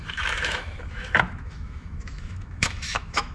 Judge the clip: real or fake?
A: fake